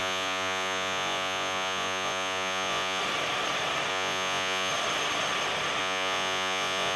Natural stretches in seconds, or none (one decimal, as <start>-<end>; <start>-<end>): 3.0-3.9; 4.7-5.8

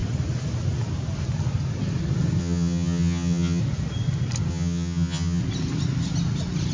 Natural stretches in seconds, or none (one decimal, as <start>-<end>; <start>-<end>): 0.0-2.4; 3.6-4.5; 5.4-6.7

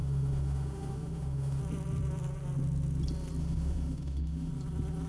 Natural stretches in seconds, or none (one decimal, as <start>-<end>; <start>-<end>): 1.6-3.4; 4.5-5.1

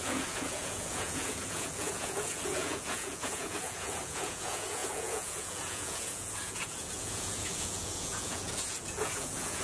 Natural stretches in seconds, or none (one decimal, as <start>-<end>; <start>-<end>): none

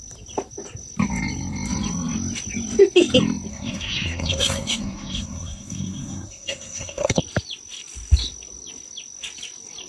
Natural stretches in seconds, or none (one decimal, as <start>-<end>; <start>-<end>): 0.0-3.5; 7.2-9.9